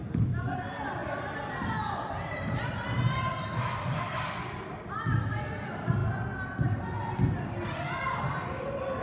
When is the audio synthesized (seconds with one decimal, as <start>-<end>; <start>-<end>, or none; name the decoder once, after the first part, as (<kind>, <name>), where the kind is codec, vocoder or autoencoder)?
none